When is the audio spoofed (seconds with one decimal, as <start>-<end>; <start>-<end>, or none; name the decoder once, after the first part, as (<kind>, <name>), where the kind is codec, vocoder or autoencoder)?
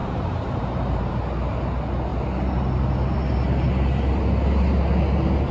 0.0-1.1 (vocoder, BigVGAN v2)